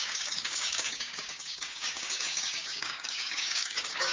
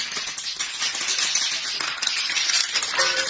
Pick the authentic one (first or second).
second